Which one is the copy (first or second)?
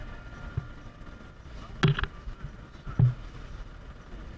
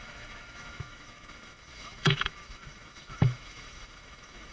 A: second